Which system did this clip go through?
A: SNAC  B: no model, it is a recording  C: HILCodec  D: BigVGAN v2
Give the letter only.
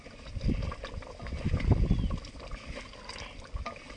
B